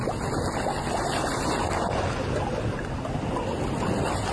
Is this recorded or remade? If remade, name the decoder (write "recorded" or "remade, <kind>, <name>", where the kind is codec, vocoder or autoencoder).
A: recorded